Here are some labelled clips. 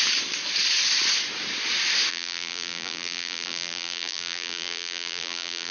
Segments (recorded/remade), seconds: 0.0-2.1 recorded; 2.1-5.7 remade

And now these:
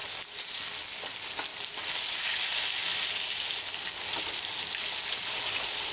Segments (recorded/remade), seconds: 0.0-1.0 remade; 1.0-5.9 recorded

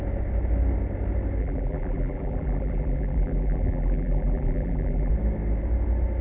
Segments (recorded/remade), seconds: 0.0-1.4 recorded; 1.4-5.1 remade; 5.1-6.2 recorded